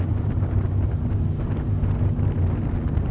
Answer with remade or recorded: recorded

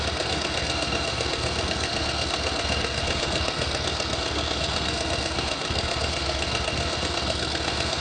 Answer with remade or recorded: remade